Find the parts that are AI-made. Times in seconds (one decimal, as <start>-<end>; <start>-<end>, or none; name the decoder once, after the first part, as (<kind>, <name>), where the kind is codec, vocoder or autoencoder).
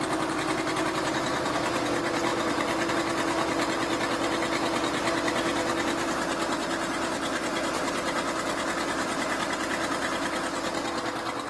none